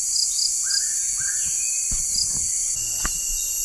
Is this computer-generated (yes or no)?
no